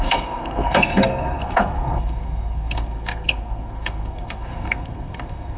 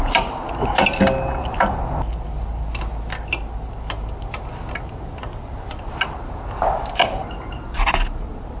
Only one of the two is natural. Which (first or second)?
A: second